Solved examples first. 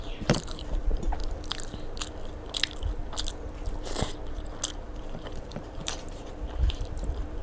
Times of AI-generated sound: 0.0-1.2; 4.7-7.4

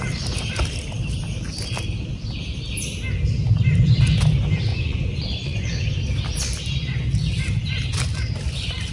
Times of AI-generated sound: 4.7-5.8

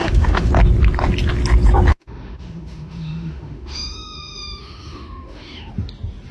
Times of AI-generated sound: 0.0-0.5; 1.9-5.7

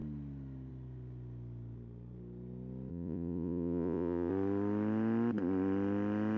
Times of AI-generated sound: 2.9-4.3

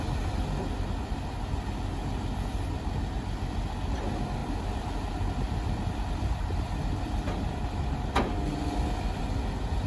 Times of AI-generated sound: none

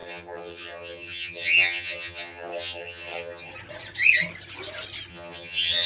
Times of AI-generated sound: 0.0-3.5; 5.1-5.9